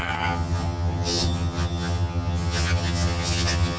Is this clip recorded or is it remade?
remade